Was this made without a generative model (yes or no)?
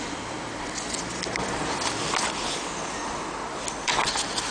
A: yes